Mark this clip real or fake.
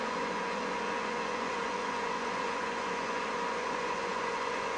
fake